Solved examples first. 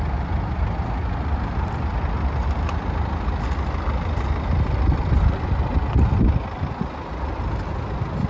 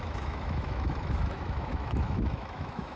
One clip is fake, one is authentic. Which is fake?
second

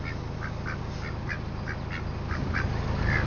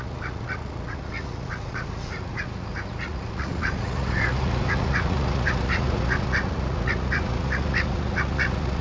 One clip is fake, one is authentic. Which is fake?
second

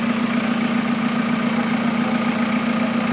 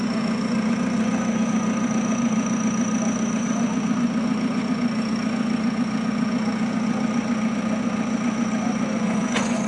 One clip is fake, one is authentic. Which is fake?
second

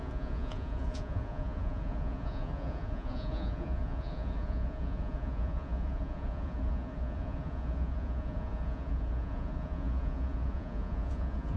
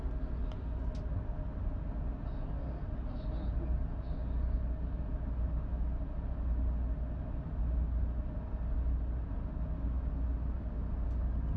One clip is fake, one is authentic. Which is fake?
first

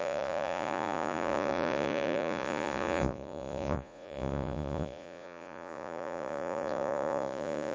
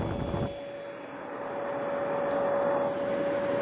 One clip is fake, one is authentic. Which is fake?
first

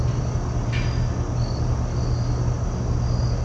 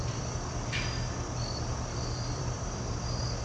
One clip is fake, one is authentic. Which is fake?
second